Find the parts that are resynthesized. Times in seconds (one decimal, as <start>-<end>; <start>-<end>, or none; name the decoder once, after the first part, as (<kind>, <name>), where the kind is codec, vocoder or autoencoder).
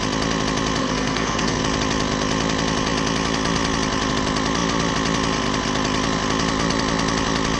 0.8-1.6 (codec, SNAC)